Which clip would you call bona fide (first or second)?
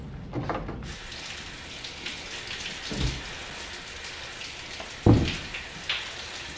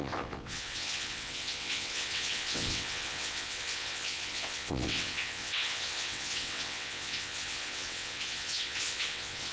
first